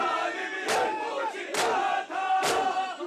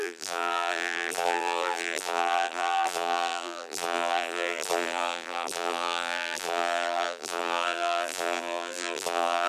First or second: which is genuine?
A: first